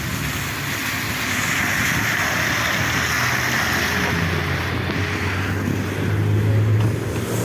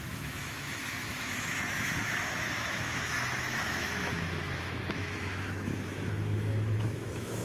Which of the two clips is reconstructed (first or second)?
second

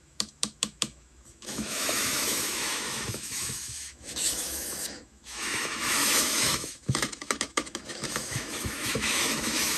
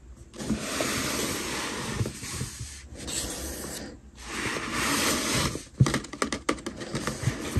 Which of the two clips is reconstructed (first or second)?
first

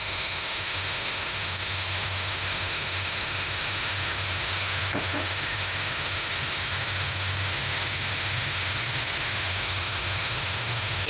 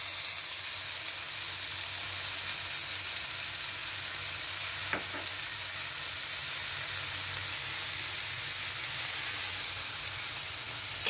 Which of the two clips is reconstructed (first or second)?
first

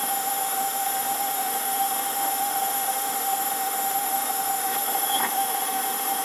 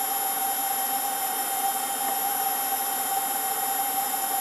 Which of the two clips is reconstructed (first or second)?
first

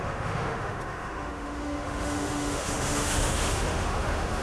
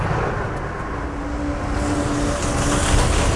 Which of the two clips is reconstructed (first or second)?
first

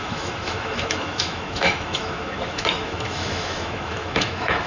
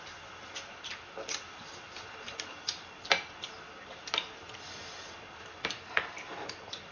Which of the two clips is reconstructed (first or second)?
first